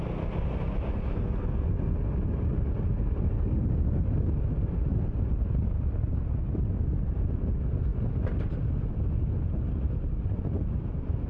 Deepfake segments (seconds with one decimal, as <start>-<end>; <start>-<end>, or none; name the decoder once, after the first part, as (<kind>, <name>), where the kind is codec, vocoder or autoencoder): none